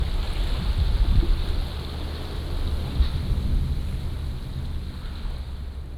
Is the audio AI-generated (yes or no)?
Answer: no